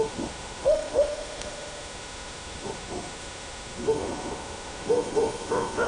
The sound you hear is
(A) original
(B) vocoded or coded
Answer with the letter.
B